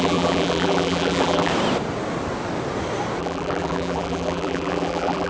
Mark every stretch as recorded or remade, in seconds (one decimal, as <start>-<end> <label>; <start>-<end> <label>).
0.0-1.5 remade; 1.5-3.2 recorded; 3.2-5.3 remade